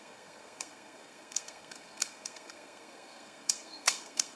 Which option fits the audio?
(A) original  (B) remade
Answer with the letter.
B